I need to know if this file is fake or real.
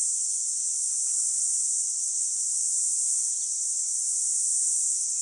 real